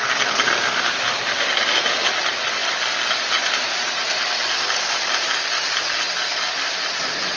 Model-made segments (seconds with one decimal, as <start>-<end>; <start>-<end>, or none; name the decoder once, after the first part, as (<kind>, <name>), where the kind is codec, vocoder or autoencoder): 2.6-3.5 (vocoder, BigVGAN v2)